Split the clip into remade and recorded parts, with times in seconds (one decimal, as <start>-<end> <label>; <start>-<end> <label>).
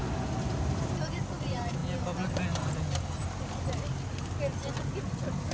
0.0-5.5 recorded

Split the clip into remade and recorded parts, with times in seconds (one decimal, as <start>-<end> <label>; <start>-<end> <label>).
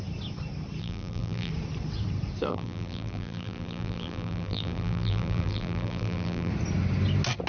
0.0-0.8 recorded; 0.8-1.5 remade; 1.5-2.5 recorded; 2.5-6.5 remade; 6.5-7.5 recorded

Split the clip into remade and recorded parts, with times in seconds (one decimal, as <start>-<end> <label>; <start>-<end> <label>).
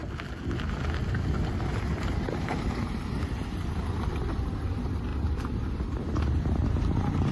0.0-1.7 recorded; 1.7-3.4 remade; 3.4-4.6 recorded; 4.6-7.3 remade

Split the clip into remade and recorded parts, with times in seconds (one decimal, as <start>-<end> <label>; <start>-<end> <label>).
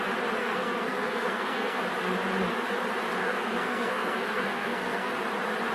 0.0-0.4 recorded; 0.4-1.8 remade; 1.8-3.2 recorded; 3.2-5.1 remade; 5.1-5.7 recorded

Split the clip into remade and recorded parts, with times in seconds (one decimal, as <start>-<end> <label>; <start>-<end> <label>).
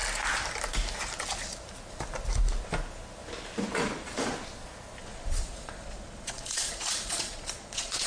0.0-5.0 recorded; 5.0-8.1 remade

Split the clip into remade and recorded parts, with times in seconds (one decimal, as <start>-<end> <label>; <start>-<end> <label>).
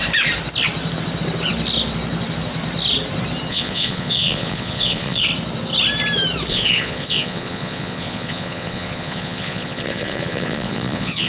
0.0-3.5 recorded; 3.5-5.3 remade; 5.3-6.5 recorded; 6.5-11.3 remade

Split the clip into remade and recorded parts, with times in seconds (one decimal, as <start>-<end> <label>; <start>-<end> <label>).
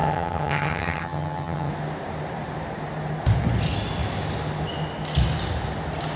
0.0-1.7 remade; 1.7-6.2 recorded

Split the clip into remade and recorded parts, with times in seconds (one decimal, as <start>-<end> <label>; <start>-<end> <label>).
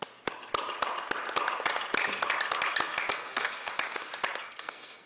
0.0-3.1 recorded; 3.1-3.7 remade; 3.7-4.4 recorded; 4.4-5.1 remade